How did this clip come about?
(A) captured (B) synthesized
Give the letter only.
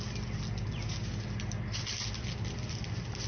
A